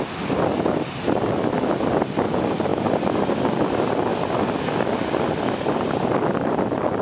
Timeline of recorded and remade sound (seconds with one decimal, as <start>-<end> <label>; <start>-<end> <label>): 0.0-7.0 recorded